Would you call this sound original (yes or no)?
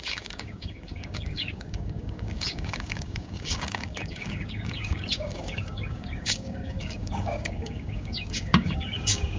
no